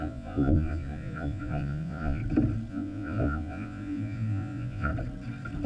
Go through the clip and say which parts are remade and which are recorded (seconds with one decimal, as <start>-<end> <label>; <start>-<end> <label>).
0.0-2.2 remade; 2.2-2.7 recorded; 2.7-4.9 remade; 4.9-5.7 recorded